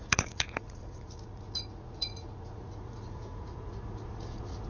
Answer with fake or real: fake